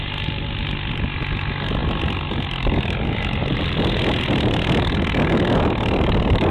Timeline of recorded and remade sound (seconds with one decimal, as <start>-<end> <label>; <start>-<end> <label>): 0.0-6.5 recorded